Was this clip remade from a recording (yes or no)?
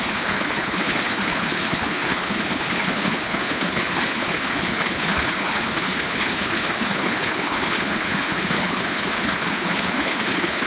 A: yes